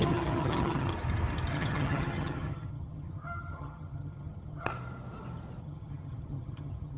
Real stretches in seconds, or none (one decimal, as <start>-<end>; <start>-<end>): 0.9-1.5; 4.7-5.6